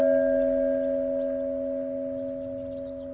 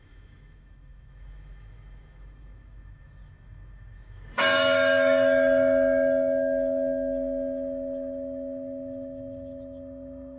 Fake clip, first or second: second